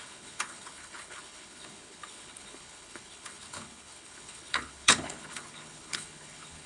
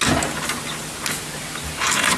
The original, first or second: second